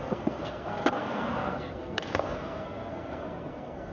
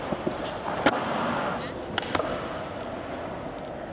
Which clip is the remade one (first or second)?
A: first